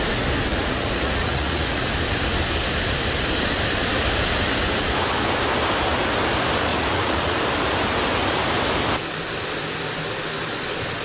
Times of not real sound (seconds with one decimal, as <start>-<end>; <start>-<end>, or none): 0.5-1.9; 6.7-7.4